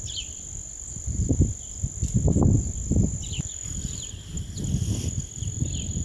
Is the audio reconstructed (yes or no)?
yes